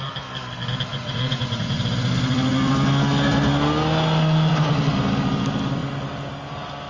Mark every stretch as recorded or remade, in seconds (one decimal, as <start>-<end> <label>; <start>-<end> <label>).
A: 0.0-0.9 recorded; 0.9-1.8 remade; 1.8-6.9 recorded